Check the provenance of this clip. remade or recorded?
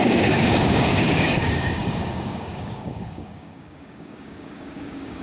remade